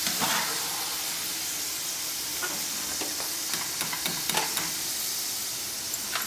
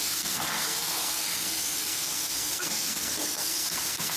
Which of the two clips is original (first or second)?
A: first